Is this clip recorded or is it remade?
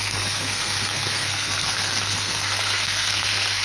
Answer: remade